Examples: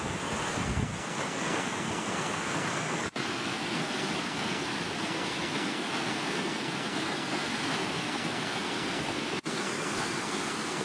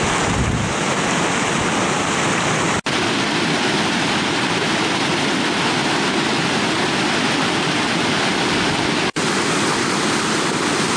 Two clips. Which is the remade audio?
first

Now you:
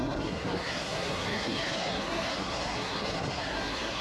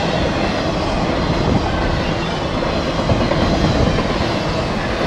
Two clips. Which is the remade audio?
first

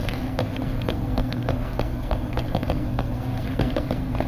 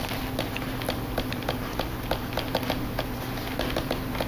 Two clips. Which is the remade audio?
first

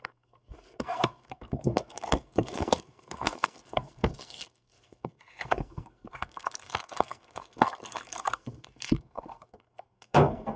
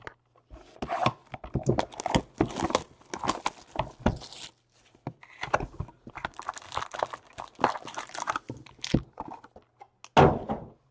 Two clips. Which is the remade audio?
first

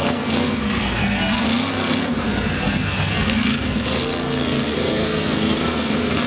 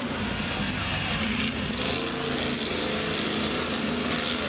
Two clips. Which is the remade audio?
first